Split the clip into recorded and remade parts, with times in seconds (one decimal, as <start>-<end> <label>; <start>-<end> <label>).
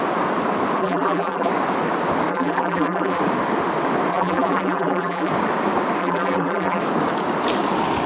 0.0-0.8 recorded; 0.8-1.5 remade; 1.5-2.3 recorded; 2.3-3.2 remade; 3.2-4.1 recorded; 4.1-5.3 remade; 5.3-6.0 recorded; 6.0-6.8 remade; 6.8-8.1 recorded